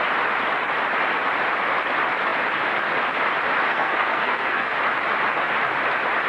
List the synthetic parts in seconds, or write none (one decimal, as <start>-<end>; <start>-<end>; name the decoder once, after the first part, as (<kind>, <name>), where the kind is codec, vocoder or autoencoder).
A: 3.7-4.7 (codec, SNAC)